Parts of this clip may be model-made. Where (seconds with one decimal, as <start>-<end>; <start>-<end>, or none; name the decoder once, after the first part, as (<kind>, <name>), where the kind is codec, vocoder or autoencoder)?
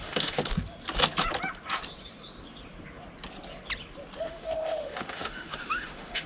0.0-0.4 (autoencoder, DAC-VAE); 4.2-6.3